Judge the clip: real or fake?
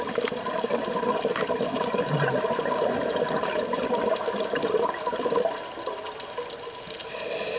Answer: real